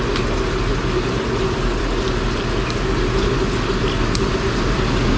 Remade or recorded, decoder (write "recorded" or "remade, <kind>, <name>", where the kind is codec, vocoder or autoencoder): recorded